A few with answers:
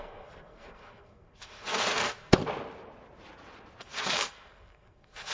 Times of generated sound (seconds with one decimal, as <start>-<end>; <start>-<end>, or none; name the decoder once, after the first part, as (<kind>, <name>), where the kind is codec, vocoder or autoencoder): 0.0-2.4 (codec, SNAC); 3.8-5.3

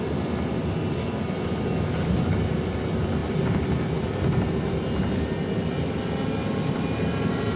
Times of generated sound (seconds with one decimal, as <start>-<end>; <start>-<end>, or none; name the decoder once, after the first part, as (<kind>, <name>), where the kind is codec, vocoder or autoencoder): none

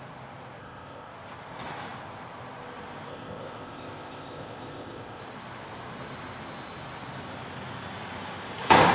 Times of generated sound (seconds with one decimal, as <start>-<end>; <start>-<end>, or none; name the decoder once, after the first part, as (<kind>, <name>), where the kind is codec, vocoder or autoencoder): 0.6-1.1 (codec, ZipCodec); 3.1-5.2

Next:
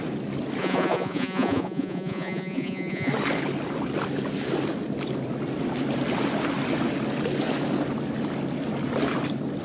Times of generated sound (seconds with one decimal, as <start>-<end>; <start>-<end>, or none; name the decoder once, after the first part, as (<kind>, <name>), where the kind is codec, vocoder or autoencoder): 0.6-3.1 (vocoder, Vocos)

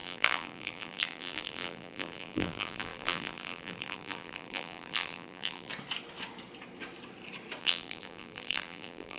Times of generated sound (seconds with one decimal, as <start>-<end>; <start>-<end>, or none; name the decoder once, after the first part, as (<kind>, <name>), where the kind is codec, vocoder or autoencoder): 0.0-5.7 (vocoder, BigVGAN v2); 7.6-9.2

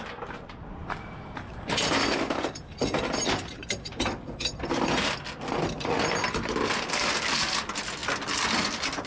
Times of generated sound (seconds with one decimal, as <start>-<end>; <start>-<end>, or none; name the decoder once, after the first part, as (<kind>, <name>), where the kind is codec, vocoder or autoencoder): 0.8-4.0 (vocoder, BigVGAN v2)